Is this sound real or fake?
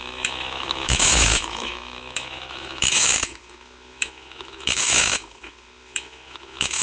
fake